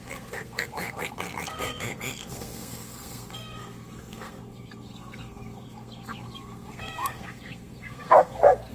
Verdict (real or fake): fake